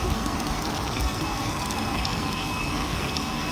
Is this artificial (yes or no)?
yes